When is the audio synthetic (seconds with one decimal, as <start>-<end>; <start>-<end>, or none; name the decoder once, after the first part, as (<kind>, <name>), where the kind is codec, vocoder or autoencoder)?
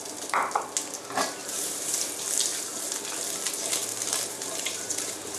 1.4-2.1 (vocoder, BigVGAN v2); 2.5-3.0; 3.9-5.4